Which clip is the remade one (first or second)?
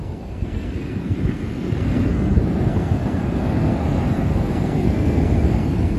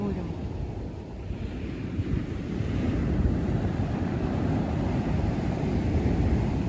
first